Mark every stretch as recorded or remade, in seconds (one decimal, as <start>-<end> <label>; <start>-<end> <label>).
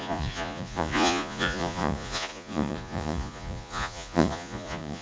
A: 0.0-5.0 remade